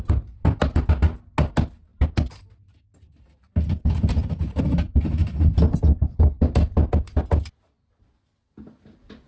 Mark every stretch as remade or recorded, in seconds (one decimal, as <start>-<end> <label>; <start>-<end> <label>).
0.0-9.3 recorded